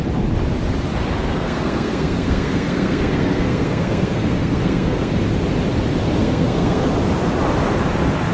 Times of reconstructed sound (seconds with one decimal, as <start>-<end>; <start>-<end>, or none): 1.3-5.1; 6.2-6.9